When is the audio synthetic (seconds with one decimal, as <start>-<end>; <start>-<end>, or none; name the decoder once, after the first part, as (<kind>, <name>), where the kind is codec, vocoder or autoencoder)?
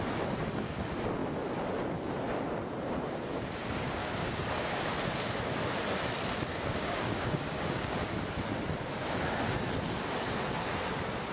4.0-4.8 (codec, DAC); 6.5-8.0